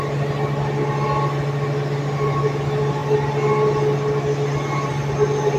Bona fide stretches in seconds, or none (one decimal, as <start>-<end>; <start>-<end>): 0.0-5.6